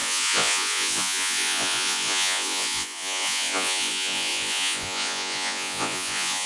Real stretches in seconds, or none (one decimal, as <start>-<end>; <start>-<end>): none